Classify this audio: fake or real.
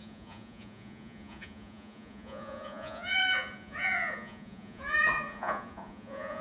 fake